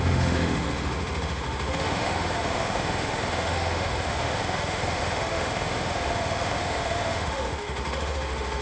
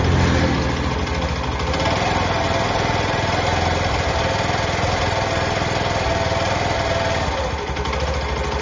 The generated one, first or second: first